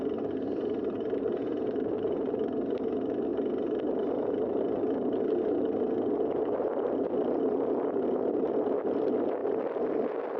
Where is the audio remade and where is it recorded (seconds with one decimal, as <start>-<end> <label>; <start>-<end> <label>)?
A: 0.0-3.3 remade; 3.3-7.4 recorded; 7.4-10.4 remade

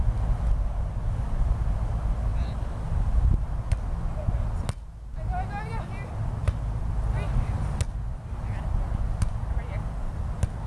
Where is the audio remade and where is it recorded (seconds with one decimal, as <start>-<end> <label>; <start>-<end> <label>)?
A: 0.0-2.3 recorded; 2.3-3.3 remade; 3.3-10.7 recorded

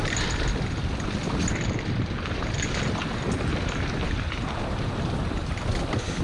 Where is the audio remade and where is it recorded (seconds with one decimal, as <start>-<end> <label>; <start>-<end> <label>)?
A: 0.0-3.5 recorded; 3.5-5.6 remade; 5.6-6.2 recorded

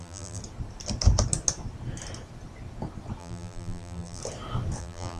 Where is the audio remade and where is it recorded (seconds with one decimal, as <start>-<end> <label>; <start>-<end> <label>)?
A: 0.0-0.4 remade; 0.4-3.2 recorded; 3.2-4.2 remade; 4.2-4.8 recorded; 4.8-5.2 remade

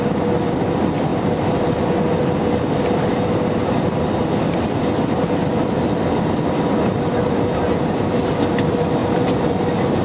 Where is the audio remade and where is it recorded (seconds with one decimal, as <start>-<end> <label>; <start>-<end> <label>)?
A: 0.0-3.6 recorded; 3.6-4.2 remade; 4.2-7.1 recorded; 7.1-7.8 remade; 7.8-9.0 recorded; 9.0-9.6 remade; 9.6-10.0 recorded

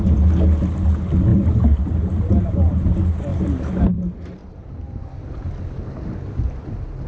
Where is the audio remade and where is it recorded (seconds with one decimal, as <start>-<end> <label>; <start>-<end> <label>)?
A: 0.0-1.3 recorded; 1.3-2.9 remade; 2.9-4.4 recorded; 4.4-5.1 remade; 5.1-7.1 recorded

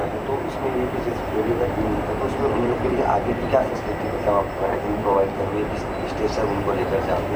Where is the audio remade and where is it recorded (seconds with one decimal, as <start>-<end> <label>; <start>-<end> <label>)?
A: 0.0-2.4 recorded; 2.4-3.5 remade; 3.5-7.4 recorded